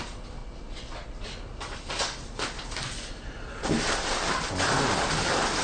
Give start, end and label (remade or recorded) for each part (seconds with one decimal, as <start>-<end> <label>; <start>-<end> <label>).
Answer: 0.0-0.4 recorded; 0.4-1.2 remade; 1.2-5.6 recorded